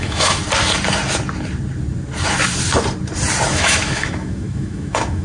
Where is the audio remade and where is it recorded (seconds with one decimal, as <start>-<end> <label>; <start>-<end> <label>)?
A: 0.0-0.4 remade; 0.4-3.5 recorded; 3.5-5.2 remade